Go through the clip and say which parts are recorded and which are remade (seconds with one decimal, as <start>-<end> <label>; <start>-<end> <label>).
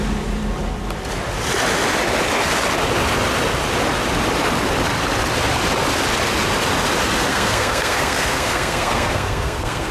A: 0.0-7.3 recorded; 7.3-9.9 remade